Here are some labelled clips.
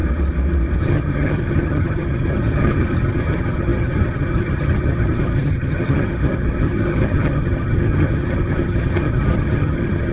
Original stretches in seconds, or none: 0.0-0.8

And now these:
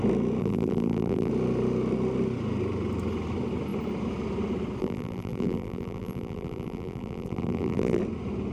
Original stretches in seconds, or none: 0.0-0.4; 1.3-4.8; 8.0-8.5

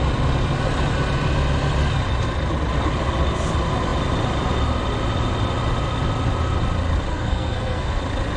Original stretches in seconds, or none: 0.0-7.1; 8.0-8.4

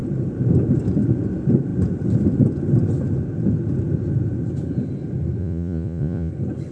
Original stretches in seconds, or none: 0.0-5.4; 6.3-6.7